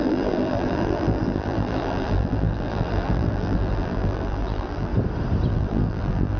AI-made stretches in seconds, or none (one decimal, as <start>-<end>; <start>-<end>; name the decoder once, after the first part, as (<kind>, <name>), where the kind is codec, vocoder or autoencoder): 0.0-4.9 (vocoder, BigVGAN v2); 5.5-6.4